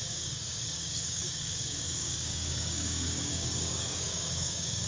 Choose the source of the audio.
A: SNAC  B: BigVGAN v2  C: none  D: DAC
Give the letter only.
D